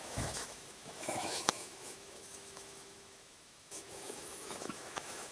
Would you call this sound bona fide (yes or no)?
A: no